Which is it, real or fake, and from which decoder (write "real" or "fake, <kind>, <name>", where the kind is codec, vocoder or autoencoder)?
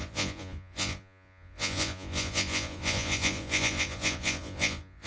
fake, vocoder, Vocos